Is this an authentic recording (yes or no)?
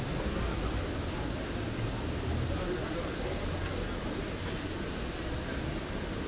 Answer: yes